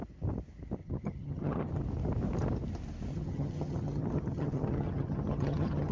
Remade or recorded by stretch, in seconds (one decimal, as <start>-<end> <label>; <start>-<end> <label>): 0.0-0.8 recorded; 0.8-1.8 remade; 1.8-3.1 recorded; 3.1-5.9 remade